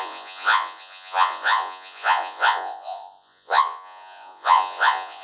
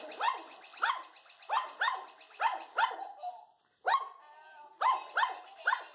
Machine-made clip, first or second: first